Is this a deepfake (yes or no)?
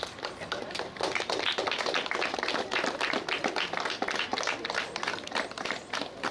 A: no